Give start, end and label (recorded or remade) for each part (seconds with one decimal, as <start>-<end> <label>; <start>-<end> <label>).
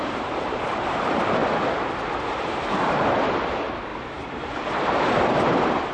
0.0-1.4 remade; 1.4-2.2 recorded; 2.2-5.9 remade